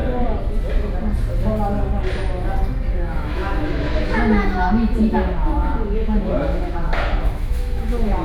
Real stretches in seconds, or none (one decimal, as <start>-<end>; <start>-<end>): 0.0-2.9